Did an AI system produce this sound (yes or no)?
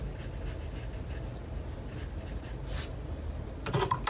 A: no